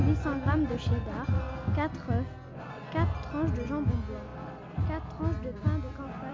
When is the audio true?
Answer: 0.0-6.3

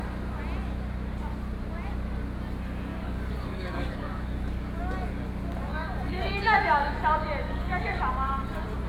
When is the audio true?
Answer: 0.0-2.9; 4.8-5.7; 6.9-7.4; 8.0-8.9

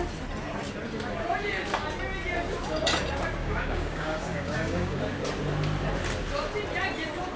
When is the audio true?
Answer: 0.0-3.4; 5.0-7.4

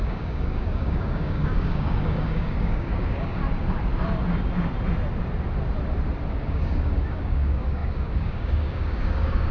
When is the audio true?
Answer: 3.4-6.5

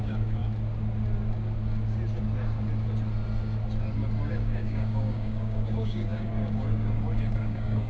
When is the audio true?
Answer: 0.4-4.3